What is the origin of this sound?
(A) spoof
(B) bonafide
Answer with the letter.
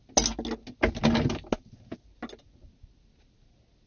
B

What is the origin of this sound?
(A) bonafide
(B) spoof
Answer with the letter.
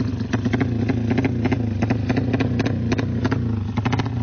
A